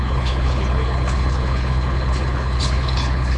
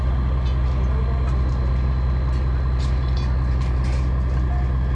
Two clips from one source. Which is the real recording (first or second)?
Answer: second